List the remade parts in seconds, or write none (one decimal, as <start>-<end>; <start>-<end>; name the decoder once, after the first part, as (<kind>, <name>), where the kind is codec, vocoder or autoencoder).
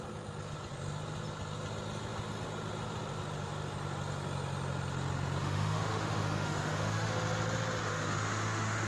5.4-7.1 (autoencoder, DAC-VAE); 7.8-8.9